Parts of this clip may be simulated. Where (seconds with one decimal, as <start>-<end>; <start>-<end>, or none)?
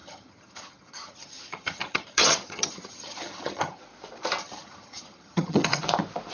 0.0-3.8; 4.4-5.8